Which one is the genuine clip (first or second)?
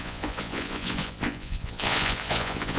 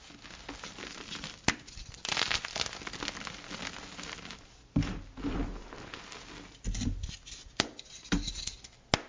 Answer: second